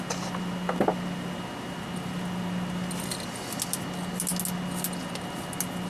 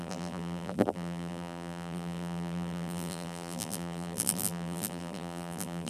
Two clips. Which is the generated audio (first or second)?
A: second